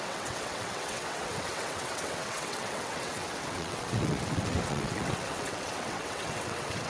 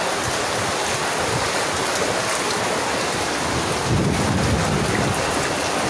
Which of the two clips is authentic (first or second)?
second